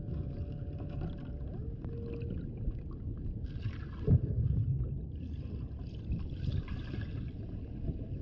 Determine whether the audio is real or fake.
real